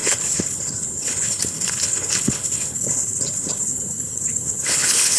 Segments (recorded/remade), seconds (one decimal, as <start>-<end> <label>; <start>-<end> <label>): 0.0-5.2 remade